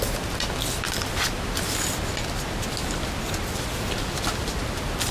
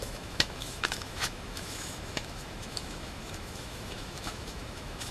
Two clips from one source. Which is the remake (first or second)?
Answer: second